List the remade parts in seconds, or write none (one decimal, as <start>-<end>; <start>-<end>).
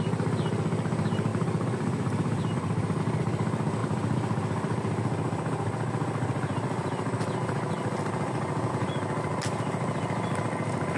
1.3-3.0; 3.8-8.7